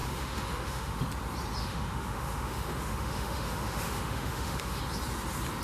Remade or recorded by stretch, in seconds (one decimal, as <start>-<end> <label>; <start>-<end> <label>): 0.0-1.0 remade; 1.0-1.6 recorded; 1.6-4.8 remade; 4.8-5.6 recorded